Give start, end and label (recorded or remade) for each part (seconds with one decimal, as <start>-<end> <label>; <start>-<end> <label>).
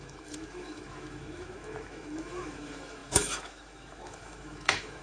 0.0-5.0 remade